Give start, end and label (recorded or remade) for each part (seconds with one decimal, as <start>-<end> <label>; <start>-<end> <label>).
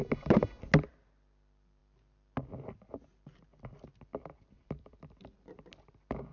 0.0-6.3 recorded